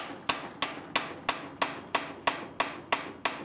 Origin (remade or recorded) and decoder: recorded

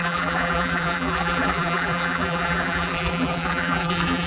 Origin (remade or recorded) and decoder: remade, vocoder, BigVGAN v2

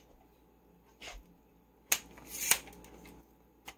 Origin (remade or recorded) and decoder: recorded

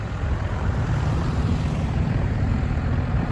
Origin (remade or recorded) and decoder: remade, vocoder, BigVGAN v2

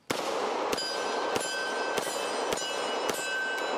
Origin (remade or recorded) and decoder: recorded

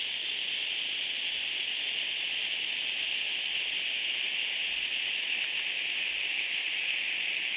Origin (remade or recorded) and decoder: remade, vocoder, BigVGAN v2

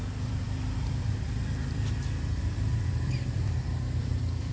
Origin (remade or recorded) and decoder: remade, vocoder, BigVGAN v2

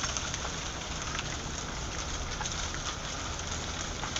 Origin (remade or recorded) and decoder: recorded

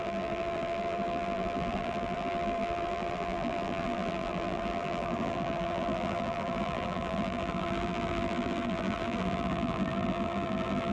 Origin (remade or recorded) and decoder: remade, vocoder, BigVGAN v2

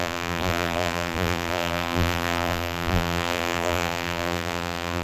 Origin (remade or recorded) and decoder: remade, vocoder, BigVGAN v2